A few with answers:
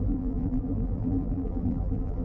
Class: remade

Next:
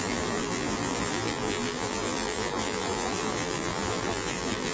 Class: remade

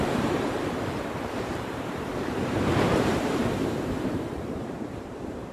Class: remade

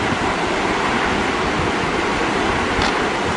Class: recorded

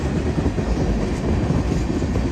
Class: recorded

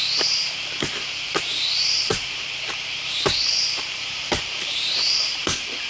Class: remade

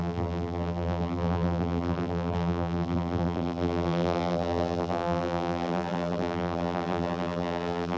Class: remade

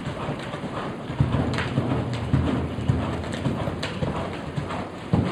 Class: recorded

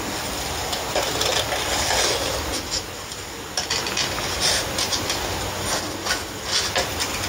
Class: recorded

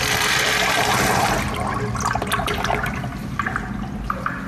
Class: recorded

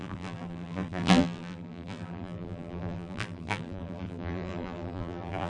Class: remade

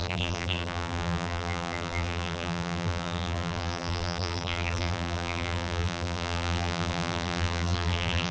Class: remade